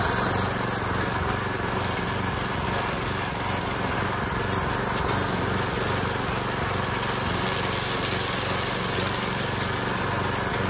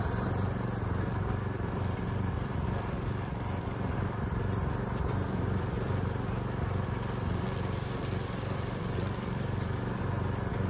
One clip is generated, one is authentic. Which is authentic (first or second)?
first